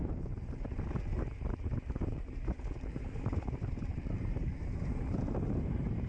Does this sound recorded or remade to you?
remade